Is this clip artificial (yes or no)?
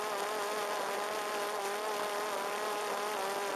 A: no